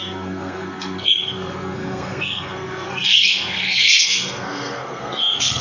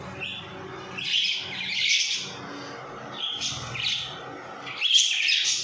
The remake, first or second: first